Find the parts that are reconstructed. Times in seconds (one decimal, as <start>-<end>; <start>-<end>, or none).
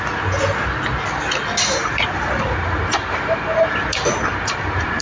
1.8-5.0